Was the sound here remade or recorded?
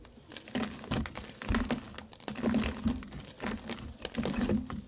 recorded